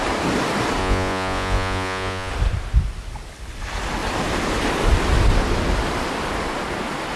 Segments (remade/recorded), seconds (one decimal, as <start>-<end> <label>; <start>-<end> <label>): 0.0-0.8 recorded; 0.8-2.3 remade; 2.3-7.2 recorded